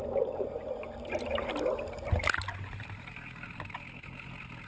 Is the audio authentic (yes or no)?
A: yes